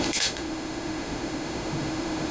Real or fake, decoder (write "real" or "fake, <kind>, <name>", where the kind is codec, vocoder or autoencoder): fake, autoencoder, DAC-VAE